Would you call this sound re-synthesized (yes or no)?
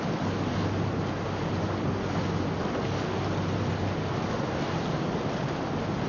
no